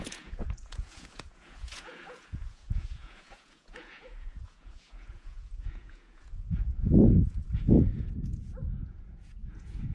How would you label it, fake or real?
fake